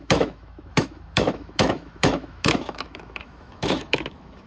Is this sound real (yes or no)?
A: no